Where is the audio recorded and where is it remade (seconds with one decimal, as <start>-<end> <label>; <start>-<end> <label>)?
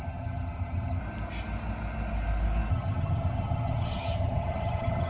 0.0-1.0 remade; 1.0-2.7 recorded; 2.7-5.1 remade